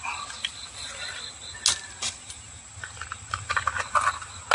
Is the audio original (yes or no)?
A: yes